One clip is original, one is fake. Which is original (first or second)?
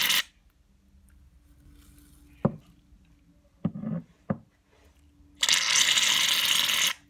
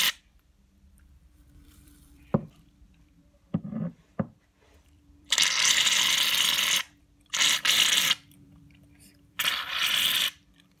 first